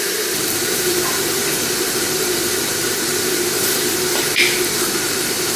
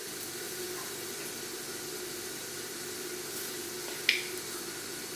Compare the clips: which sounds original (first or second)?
second